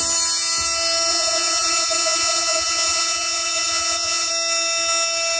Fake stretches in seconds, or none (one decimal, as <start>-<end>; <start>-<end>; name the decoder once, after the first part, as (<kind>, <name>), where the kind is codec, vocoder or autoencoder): 1.1-4.3 (vocoder, Vocos)